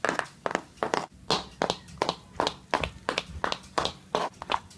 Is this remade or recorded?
recorded